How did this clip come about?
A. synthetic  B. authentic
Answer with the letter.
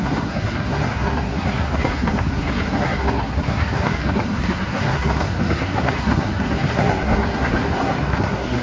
A